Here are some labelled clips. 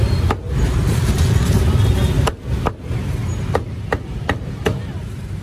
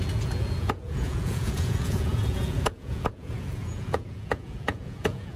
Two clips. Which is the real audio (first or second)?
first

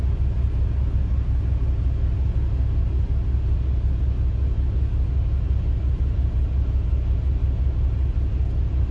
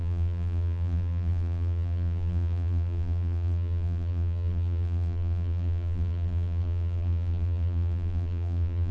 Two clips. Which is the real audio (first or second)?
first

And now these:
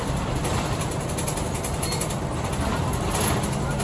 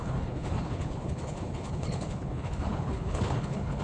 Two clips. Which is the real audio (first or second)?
first